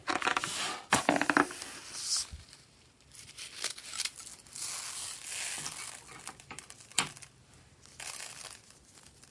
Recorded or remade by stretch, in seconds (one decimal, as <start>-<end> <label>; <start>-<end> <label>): 0.0-9.3 recorded